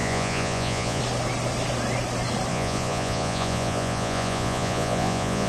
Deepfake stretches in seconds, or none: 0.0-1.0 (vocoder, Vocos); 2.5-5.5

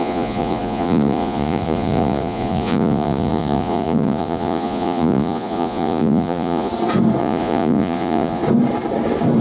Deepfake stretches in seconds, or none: 0.0-6.7 (vocoder, Vocos); 7.2-8.4

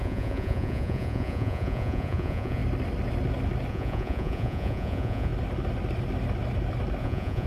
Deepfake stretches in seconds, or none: 0.0-2.6 (vocoder, Vocos); 3.7-5.3; 7.0-7.5

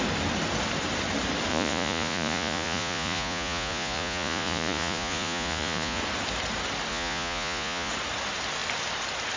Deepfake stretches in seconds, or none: 1.5-6.0 (vocoder, Vocos); 6.9-7.9

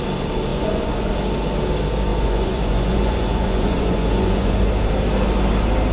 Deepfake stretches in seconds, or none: 0.5-1.1 (vocoder, Vocos); 2.1-4.7

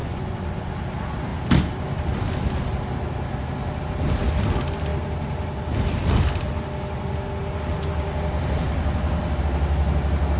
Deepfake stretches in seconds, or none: 0.0-0.7 (vocoder, Vocos)